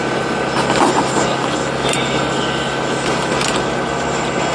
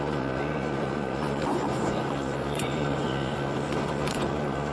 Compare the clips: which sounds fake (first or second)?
second